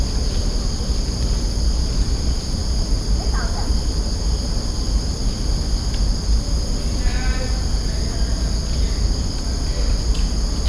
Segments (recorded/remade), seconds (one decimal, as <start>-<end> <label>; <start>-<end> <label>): 0.0-10.7 recorded